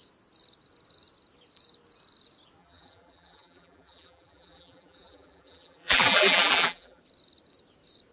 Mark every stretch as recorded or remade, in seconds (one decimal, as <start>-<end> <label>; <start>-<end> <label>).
0.0-2.6 recorded; 2.6-7.0 remade; 7.0-8.1 recorded